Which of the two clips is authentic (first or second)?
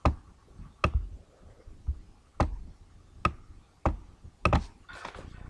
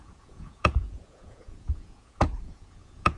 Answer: first